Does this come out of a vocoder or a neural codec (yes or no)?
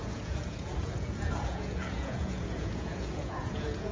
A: yes